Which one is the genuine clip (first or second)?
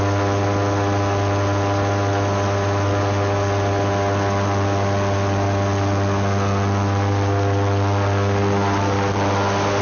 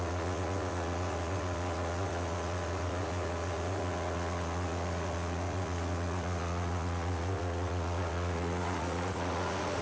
first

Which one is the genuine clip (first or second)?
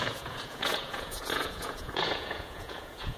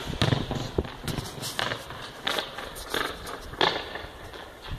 second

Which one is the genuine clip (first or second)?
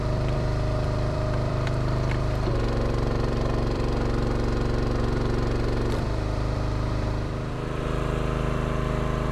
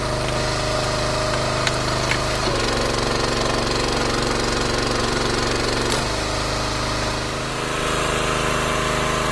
second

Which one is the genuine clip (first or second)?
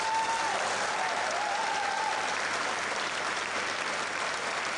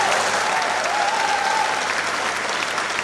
second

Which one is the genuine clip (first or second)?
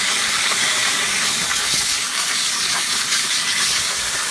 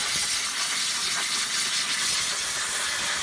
second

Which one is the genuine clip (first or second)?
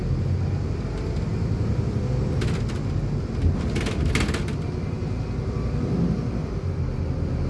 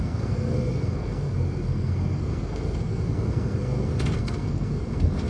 first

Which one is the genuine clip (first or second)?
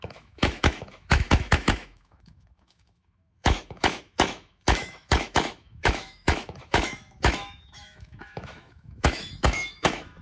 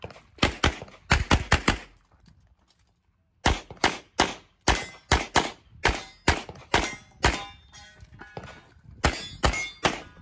second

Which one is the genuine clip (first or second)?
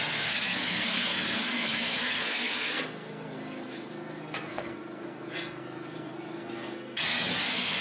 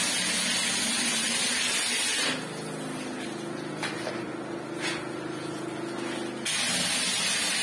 second